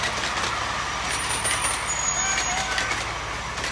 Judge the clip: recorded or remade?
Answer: recorded